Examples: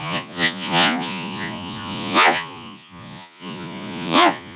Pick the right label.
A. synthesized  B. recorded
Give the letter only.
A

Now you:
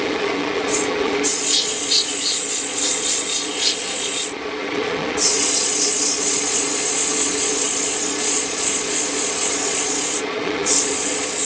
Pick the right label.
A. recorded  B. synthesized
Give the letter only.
B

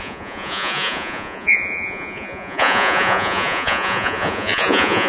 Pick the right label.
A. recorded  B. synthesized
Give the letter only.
B